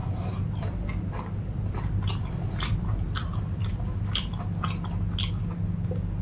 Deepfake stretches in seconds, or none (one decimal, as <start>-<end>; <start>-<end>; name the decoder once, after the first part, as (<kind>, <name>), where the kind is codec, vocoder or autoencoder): 0.0-3.7 (vocoder, BigVGAN v2)